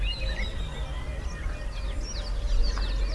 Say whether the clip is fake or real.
real